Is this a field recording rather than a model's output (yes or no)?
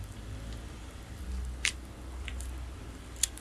no